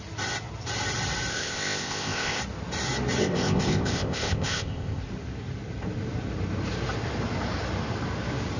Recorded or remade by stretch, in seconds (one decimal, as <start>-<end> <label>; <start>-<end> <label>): 0.0-1.3 recorded; 1.3-2.4 remade; 2.4-3.2 recorded; 3.2-5.0 remade; 5.0-8.6 recorded